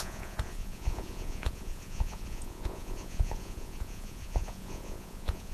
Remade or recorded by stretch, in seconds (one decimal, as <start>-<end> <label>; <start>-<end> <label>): 0.0-5.5 remade

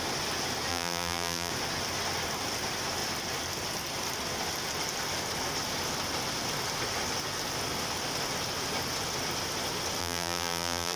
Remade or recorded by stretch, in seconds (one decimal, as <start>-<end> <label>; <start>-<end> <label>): 0.0-0.7 recorded; 0.7-1.5 remade; 1.5-10.0 recorded; 10.0-11.0 remade

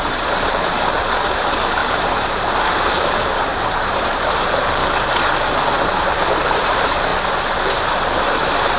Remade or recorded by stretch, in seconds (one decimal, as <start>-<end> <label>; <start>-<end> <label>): 0.0-0.7 remade; 0.7-1.3 recorded; 1.3-4.8 remade; 4.8-6.1 recorded; 6.1-7.1 remade; 7.1-8.8 recorded

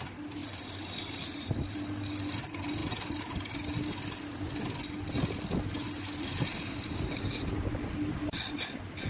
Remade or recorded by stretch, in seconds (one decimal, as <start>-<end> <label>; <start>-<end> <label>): 0.0-9.1 recorded

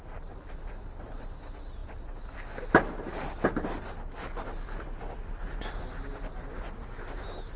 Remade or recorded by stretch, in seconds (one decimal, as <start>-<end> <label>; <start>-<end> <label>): 0.0-7.6 recorded

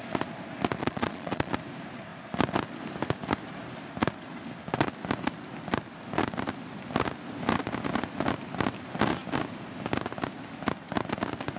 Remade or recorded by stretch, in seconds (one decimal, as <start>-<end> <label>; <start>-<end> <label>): 0.0-0.8 recorded; 0.8-1.5 remade; 1.5-11.6 recorded